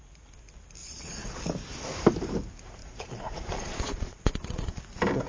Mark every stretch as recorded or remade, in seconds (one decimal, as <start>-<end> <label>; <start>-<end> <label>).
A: 0.0-0.8 recorded; 0.8-1.4 remade; 1.4-2.8 recorded; 2.8-4.8 remade; 4.8-5.3 recorded